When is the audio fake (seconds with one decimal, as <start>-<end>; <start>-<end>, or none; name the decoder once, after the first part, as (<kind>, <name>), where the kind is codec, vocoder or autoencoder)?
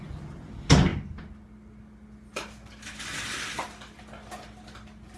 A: none